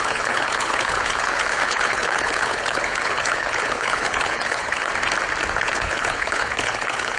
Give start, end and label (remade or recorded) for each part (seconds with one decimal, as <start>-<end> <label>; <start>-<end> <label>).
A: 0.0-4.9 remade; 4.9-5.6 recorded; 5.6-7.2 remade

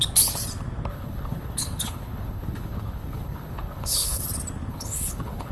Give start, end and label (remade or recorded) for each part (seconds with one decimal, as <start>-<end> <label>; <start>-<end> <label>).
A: 0.0-0.9 recorded; 0.9-4.2 remade; 4.2-4.7 recorded; 4.7-5.5 remade

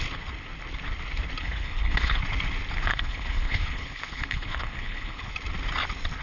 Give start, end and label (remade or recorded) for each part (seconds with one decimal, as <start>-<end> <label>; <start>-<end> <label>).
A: 0.0-1.4 recorded; 1.4-2.2 remade; 2.2-2.9 recorded; 2.9-5.3 remade; 5.3-6.2 recorded

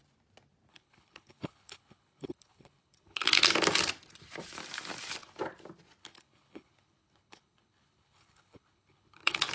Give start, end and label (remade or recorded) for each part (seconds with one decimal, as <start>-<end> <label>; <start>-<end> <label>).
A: 0.0-0.7 recorded; 0.7-3.4 remade; 3.4-6.0 recorded; 6.0-9.5 remade

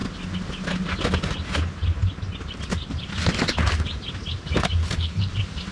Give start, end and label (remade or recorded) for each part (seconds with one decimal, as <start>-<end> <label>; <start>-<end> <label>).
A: 0.0-4.8 recorded; 4.8-5.3 remade; 5.3-5.7 recorded

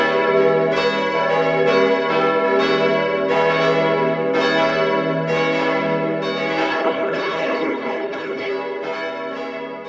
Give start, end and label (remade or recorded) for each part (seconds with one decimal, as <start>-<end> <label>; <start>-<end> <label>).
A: 0.0-6.7 recorded; 6.7-8.5 remade; 8.5-9.9 recorded

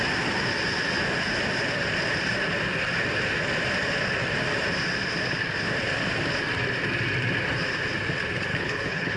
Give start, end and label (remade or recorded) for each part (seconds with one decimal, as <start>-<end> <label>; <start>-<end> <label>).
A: 0.0-8.5 recorded; 8.5-9.2 remade